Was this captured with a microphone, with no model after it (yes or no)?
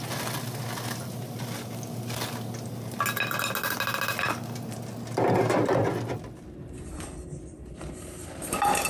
yes